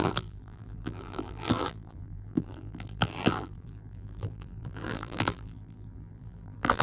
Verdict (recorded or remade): remade